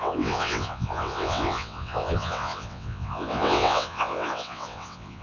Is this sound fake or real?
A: fake